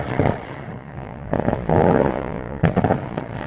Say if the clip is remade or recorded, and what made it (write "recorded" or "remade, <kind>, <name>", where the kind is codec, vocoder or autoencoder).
remade, vocoder, Vocos